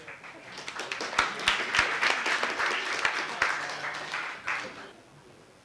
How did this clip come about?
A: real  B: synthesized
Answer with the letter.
A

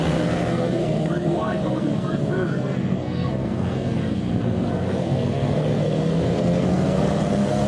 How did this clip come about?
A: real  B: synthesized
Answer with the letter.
B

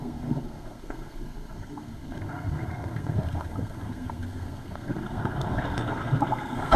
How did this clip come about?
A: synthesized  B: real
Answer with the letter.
A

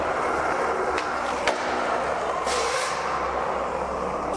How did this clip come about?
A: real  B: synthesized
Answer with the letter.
A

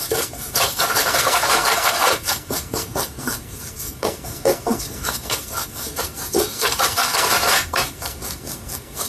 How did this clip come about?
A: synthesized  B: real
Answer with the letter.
A